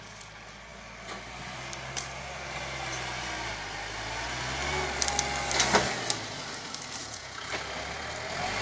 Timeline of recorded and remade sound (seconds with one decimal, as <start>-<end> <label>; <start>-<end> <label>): 0.0-7.0 recorded; 7.0-7.5 remade; 7.5-8.6 recorded